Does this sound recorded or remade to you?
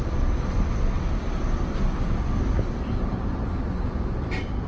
remade